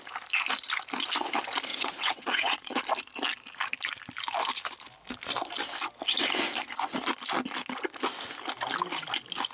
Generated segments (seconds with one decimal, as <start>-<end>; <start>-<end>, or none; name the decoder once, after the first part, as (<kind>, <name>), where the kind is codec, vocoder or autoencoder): 1.7-2.8 (vocoder, WaveNeXt)